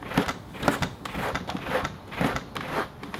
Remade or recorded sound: recorded